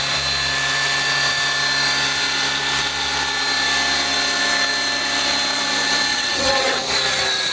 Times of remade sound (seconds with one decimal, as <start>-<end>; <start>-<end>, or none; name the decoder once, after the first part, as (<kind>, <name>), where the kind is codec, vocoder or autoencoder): 6.1-6.9 (vocoder, WaveNeXt)